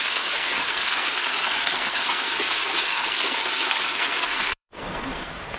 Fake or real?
fake